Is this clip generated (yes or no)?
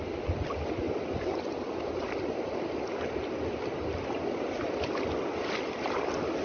no